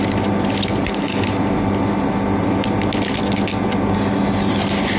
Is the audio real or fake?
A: real